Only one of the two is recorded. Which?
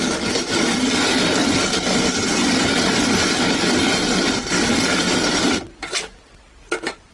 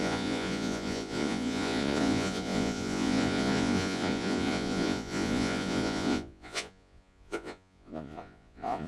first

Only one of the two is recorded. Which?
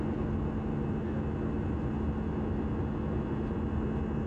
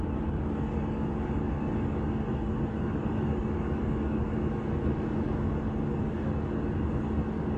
first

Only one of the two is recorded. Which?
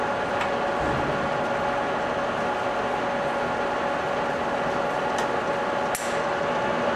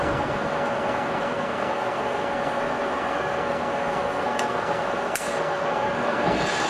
first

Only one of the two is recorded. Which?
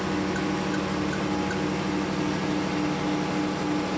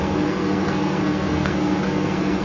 first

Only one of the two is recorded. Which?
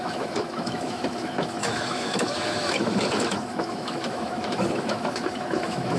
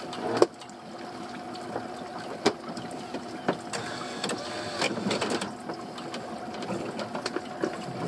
second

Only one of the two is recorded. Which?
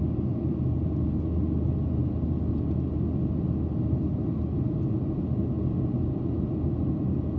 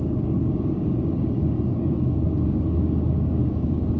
first